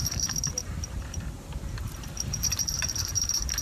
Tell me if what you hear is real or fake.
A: fake